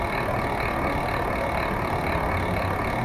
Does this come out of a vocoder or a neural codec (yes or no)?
no